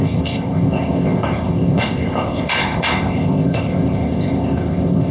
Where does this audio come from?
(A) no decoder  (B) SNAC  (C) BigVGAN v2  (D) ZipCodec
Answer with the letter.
D